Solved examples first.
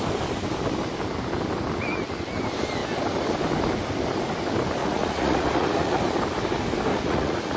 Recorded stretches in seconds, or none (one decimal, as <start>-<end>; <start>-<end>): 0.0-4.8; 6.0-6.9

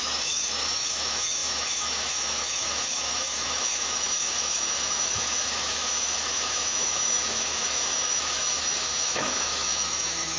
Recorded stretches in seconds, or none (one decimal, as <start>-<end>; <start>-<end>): none

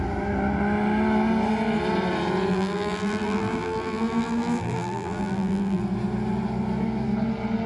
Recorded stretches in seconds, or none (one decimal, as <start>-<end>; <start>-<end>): 0.0-2.5; 5.8-7.7

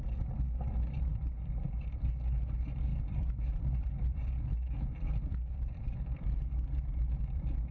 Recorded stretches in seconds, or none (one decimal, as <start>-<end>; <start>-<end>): 0.0-2.9

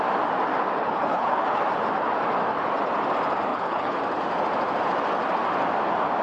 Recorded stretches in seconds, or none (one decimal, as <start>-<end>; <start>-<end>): 0.0-0.8; 1.6-3.5; 4.0-6.2